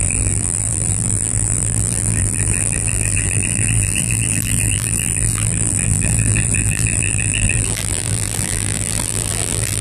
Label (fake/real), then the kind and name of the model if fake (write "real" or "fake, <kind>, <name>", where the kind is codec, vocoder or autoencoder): fake, vocoder, BigVGAN v2